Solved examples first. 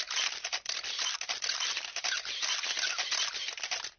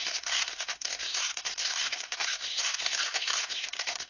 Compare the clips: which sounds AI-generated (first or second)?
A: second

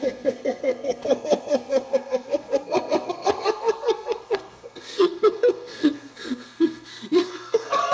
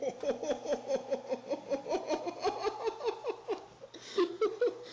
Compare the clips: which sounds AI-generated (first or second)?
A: first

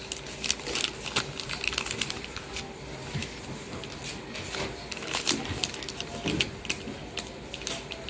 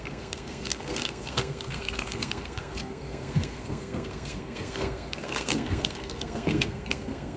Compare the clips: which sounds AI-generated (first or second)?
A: second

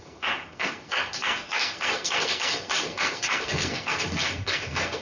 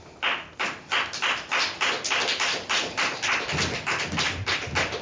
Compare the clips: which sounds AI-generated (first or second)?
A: first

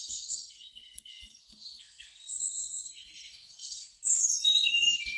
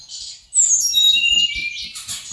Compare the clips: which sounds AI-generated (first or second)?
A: first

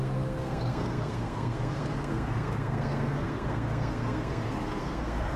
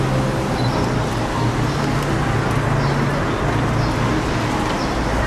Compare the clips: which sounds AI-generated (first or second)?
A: first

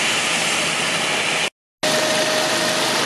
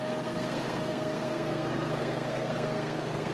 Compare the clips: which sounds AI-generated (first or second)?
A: second